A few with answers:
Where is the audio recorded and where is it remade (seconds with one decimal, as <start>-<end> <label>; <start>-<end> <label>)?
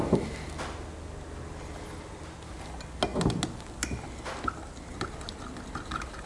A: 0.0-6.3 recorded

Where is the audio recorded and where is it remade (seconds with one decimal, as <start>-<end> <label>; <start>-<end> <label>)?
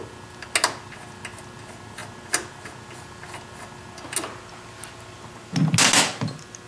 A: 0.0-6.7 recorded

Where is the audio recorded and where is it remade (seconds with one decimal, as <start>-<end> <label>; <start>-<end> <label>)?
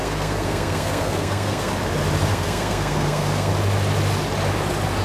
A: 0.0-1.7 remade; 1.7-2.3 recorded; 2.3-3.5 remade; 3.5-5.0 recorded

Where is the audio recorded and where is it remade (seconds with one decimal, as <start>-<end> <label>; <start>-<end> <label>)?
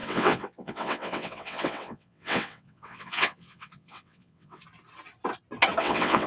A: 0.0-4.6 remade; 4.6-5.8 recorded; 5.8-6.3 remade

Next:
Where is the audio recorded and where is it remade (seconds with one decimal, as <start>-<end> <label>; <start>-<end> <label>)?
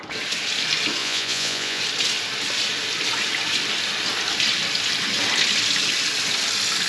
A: 0.0-1.0 recorded; 1.0-1.8 remade; 1.8-6.9 recorded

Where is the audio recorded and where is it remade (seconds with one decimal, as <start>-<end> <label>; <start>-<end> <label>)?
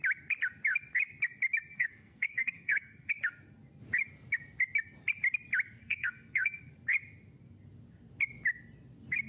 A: 0.0-1.7 recorded; 1.7-3.1 remade; 3.1-5.8 recorded; 5.8-6.7 remade; 6.7-9.3 recorded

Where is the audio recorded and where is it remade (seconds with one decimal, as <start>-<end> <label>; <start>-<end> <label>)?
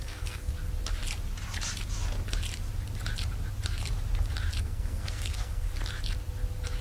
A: 0.0-0.5 remade; 0.5-4.6 recorded; 4.6-5.7 remade; 5.7-6.8 recorded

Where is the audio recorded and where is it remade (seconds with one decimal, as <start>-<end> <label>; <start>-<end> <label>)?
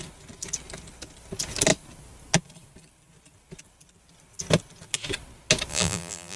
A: 0.0-5.7 recorded; 5.7-6.4 remade